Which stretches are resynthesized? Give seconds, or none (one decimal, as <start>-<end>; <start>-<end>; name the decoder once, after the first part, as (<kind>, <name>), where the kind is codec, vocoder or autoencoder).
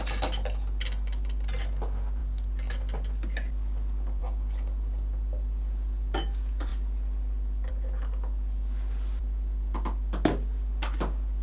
none